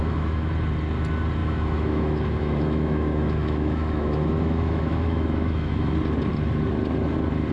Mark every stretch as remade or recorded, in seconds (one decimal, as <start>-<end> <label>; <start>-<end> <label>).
0.0-0.5 remade; 0.5-1.4 recorded; 1.4-5.9 remade; 5.9-7.5 recorded